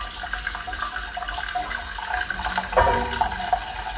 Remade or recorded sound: recorded